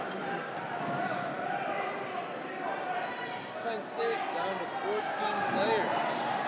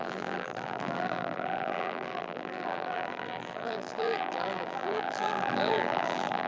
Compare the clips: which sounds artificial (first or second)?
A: second